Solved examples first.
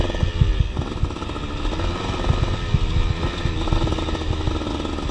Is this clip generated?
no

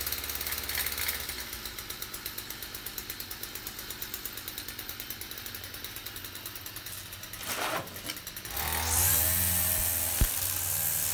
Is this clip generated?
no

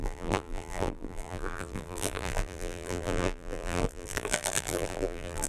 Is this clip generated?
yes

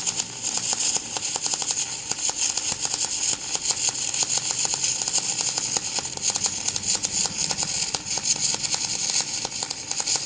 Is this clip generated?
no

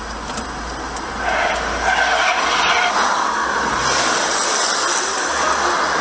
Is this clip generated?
no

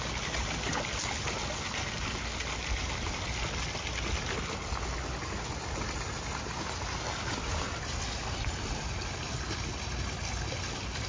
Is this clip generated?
no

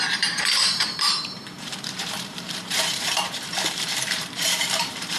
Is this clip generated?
yes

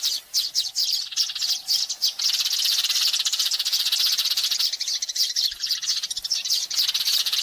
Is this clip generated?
yes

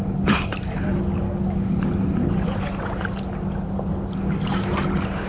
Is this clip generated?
no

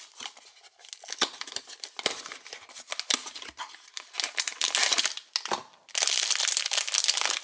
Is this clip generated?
no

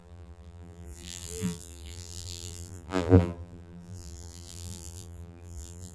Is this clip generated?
yes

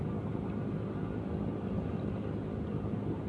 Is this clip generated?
no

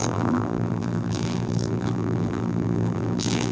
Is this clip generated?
yes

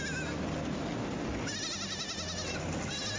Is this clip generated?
no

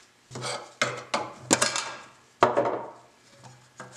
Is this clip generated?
no